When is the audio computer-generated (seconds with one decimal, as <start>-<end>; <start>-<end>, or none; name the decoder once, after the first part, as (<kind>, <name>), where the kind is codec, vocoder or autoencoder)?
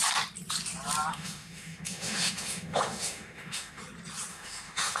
1.1-3.8 (autoencoder, DAC-VAE); 4.3-5.0